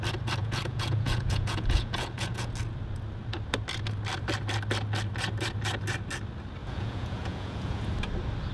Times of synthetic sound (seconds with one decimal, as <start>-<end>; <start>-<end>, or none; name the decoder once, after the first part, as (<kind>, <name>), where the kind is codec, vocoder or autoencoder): 0.4-2.5 (vocoder, Vocos); 6.6-7.8